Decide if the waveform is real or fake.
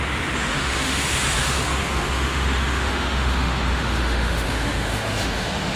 fake